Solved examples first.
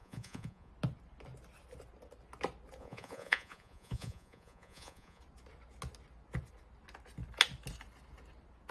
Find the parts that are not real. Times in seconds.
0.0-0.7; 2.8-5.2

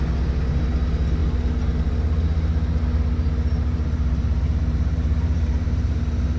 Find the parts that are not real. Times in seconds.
3.7-6.4